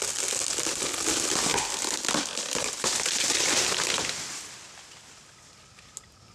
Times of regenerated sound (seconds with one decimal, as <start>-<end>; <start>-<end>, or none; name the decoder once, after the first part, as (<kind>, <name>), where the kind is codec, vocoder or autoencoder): none